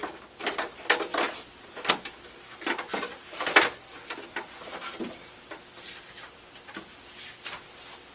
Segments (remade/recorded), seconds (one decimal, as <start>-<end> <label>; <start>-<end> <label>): 0.0-8.1 recorded